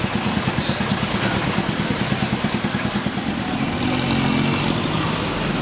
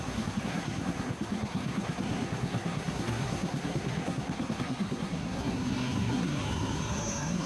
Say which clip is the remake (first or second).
second